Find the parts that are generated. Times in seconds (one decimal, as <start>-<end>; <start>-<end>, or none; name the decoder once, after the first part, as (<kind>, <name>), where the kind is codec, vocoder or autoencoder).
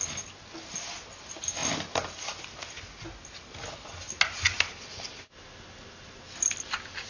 none